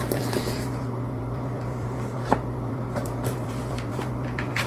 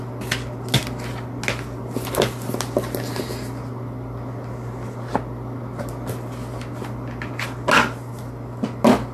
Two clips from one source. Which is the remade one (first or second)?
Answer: first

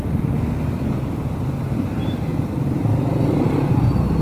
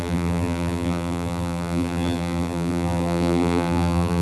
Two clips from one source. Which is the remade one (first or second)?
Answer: second